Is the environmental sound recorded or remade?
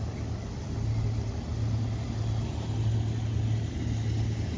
recorded